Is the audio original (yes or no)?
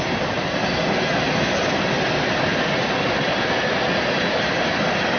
yes